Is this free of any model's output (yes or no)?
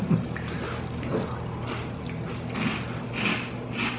yes